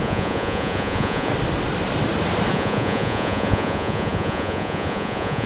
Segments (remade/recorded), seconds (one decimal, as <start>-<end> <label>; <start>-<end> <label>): 0.0-1.3 remade; 1.3-2.5 recorded; 2.5-5.5 remade